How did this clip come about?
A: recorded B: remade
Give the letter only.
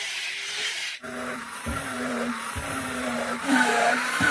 B